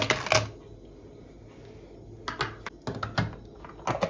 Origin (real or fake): real